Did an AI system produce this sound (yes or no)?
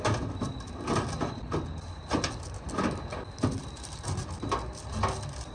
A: no